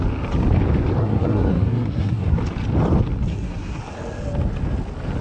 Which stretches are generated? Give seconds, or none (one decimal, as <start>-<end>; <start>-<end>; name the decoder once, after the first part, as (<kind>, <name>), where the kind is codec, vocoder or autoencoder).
1.0-2.4 (codec, SNAC); 3.3-3.8